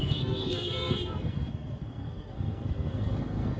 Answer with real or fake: fake